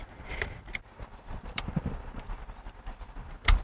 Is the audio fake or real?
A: fake